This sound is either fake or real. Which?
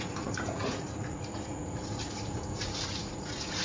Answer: fake